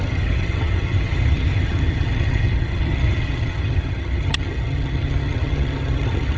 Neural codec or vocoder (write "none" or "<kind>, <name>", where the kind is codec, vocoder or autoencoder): vocoder, HiFi-GAN